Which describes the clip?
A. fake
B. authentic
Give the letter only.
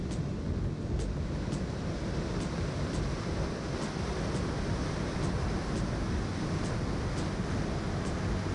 B